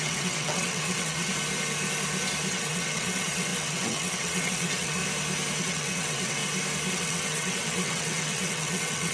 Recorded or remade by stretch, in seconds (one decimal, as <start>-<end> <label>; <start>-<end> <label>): 0.0-1.3 remade; 1.3-2.5 recorded; 2.5-5.0 remade; 5.0-5.6 recorded; 5.6-6.4 remade; 6.4-6.9 recorded; 6.9-9.1 remade